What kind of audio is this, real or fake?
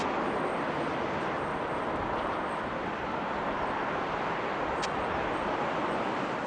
real